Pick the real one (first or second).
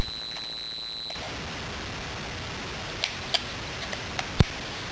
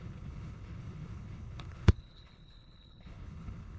first